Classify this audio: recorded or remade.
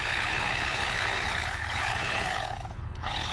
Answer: remade